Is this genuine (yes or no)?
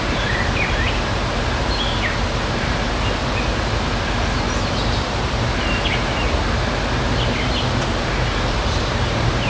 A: no